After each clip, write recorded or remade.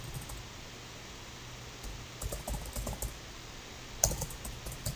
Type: recorded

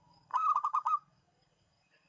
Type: remade